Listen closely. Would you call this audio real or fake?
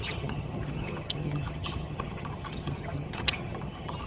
fake